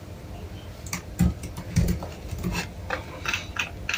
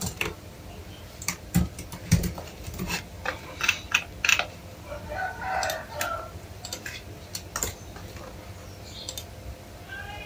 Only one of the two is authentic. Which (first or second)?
first